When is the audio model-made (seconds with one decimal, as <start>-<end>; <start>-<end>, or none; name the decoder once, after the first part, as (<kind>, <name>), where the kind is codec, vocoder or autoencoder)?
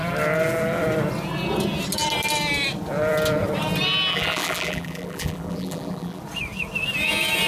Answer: 4.1-6.2 (vocoder, BigVGAN v2)